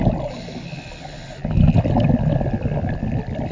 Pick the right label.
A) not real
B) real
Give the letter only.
B